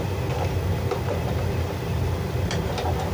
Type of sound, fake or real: real